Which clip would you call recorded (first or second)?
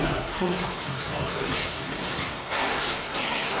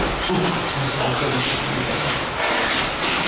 second